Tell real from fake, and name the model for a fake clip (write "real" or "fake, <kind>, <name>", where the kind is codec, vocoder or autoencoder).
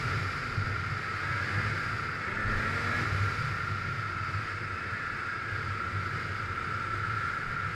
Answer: real